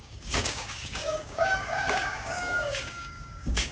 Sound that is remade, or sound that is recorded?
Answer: remade